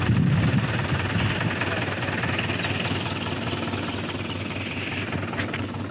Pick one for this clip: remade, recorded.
recorded